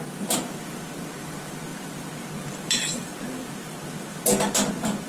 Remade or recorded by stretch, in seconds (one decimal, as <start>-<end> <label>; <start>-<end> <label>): 0.0-5.1 recorded